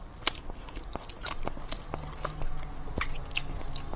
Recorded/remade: recorded